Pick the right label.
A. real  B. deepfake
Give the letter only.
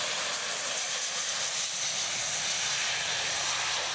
A